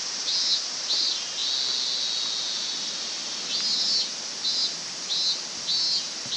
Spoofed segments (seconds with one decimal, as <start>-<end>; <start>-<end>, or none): none